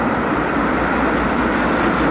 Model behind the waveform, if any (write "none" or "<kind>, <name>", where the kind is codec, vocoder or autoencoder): none